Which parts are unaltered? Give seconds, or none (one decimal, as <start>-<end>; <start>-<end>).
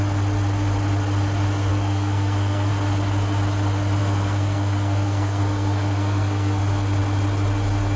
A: 0.0-1.7; 2.7-4.0; 6.6-8.0